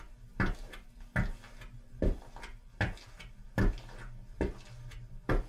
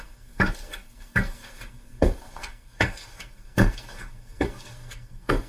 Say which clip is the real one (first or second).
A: first